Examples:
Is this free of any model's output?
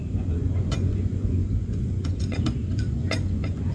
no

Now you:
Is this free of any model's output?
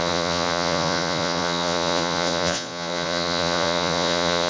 no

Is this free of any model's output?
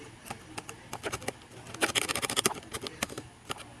yes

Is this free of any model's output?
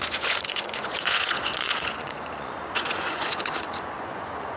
no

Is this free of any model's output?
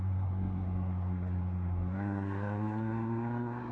no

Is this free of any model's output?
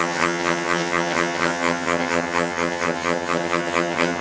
no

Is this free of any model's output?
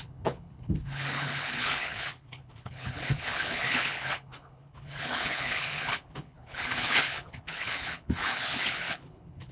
no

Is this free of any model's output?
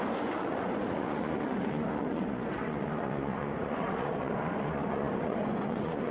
no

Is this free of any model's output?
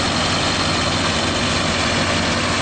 no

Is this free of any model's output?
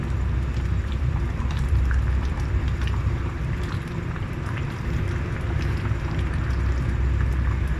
no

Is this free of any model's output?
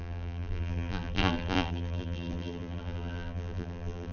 no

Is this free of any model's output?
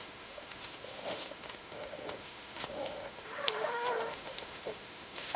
no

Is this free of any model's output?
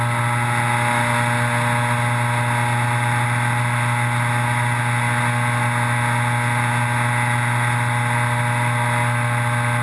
yes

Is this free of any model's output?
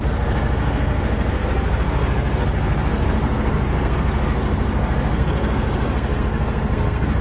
no